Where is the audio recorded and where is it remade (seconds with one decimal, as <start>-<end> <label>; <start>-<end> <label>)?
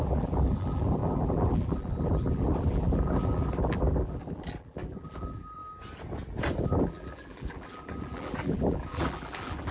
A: 0.0-5.6 remade; 5.6-6.6 recorded; 6.6-9.7 remade